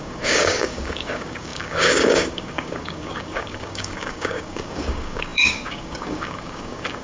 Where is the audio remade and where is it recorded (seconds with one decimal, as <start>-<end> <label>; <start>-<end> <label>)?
0.0-7.0 remade